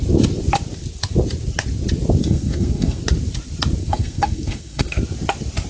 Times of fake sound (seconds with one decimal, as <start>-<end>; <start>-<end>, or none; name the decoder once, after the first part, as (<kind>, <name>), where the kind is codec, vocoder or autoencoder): 2.2-3.0 (codec, SNAC); 3.8-5.0